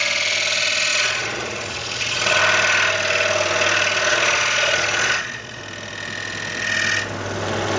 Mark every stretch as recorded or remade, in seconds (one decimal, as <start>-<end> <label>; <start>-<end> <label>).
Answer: 0.0-0.9 recorded; 0.9-2.4 remade; 2.4-4.1 recorded; 4.1-5.6 remade; 5.6-7.8 recorded